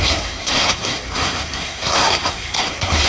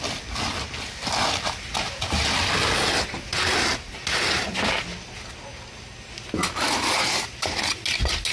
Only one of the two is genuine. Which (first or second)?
second